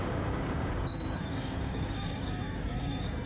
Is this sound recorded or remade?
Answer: remade